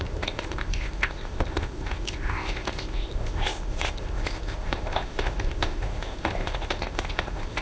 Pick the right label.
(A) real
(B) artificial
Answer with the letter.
B